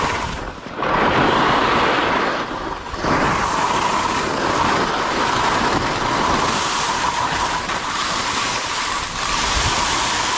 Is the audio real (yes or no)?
yes